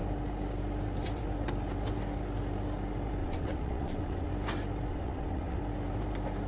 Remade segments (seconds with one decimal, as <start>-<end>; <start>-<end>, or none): 3.2-4.3; 4.9-5.6